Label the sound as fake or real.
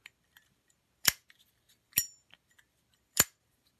fake